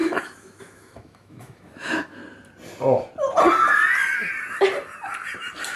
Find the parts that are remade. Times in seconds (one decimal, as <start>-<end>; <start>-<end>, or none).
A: 0.0-2.2